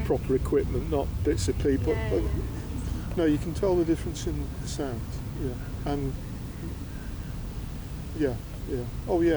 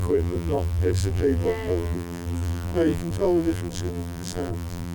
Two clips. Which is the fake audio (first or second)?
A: second